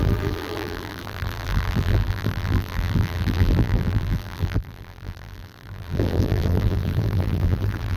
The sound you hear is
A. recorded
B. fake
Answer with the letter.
B